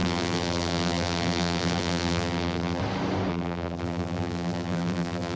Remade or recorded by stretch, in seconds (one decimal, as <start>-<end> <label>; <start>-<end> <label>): 0.0-2.8 remade; 2.8-3.3 recorded; 3.3-5.4 remade